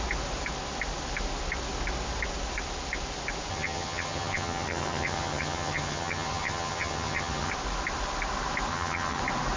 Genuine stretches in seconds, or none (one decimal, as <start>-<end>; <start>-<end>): 0.0-3.5; 7.5-8.7; 9.2-9.6